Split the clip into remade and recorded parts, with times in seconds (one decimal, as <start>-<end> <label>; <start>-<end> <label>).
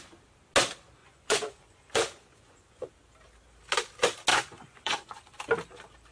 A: 0.0-1.0 recorded; 1.0-2.9 remade; 2.9-4.3 recorded; 4.3-5.4 remade; 5.4-6.1 recorded